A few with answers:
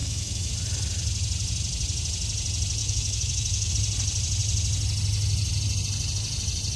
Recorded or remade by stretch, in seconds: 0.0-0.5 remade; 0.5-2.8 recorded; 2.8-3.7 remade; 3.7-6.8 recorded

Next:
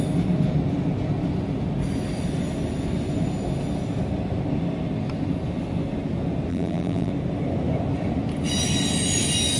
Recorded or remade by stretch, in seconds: 0.0-6.5 recorded; 6.5-7.1 remade; 7.1-9.6 recorded

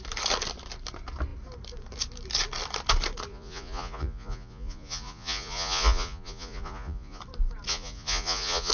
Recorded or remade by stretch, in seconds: 0.0-3.3 recorded; 3.3-7.2 remade; 7.2-7.7 recorded; 7.7-8.7 remade

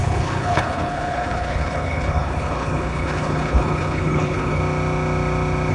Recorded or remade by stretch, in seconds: 0.0-4.6 remade; 4.6-5.7 recorded

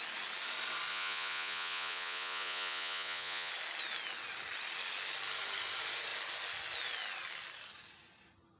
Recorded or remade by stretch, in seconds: 0.0-0.9 recorded; 0.9-3.5 remade; 3.5-8.6 recorded

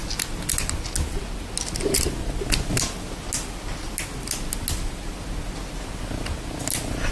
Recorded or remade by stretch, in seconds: 0.0-7.1 recorded